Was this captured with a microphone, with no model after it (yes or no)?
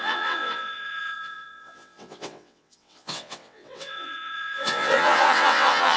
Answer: no